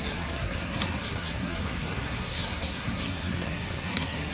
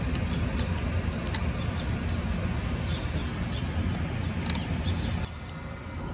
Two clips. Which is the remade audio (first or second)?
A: first